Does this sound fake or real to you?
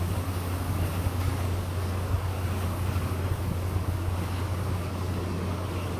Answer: fake